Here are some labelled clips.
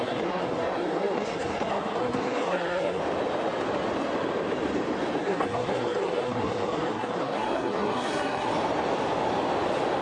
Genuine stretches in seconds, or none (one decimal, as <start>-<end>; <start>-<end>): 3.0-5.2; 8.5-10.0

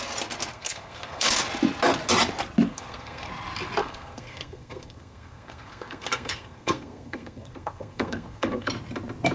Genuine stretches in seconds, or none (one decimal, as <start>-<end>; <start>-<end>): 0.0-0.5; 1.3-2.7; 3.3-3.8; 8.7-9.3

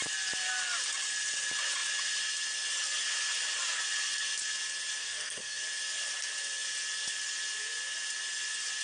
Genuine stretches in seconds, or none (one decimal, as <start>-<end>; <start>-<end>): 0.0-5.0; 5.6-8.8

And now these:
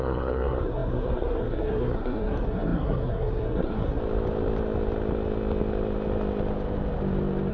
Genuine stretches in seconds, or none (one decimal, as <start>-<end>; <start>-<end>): 4.0-7.5

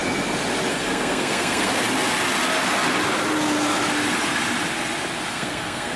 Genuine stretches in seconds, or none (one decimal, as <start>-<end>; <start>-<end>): 0.0-0.7; 1.7-5.3